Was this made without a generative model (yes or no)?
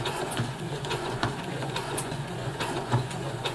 no